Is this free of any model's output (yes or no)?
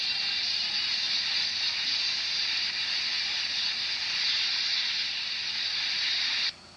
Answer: no